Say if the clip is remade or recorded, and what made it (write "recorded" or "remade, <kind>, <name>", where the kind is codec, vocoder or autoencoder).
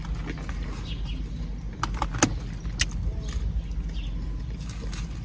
recorded